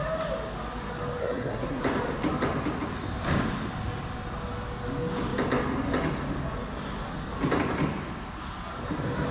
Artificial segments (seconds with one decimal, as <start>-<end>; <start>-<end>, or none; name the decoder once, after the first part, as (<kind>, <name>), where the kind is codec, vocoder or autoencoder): 1.2-1.8 (codec, SNAC)